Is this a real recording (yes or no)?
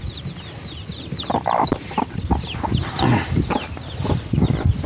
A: yes